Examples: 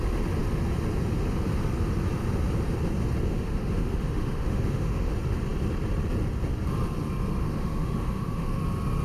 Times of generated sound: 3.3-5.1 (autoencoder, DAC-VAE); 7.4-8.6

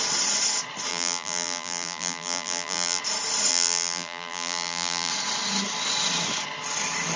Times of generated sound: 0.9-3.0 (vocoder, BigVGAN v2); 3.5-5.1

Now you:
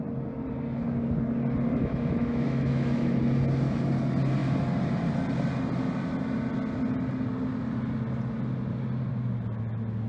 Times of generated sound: 1.7-3.2 (autoencoder, DAC-VAE)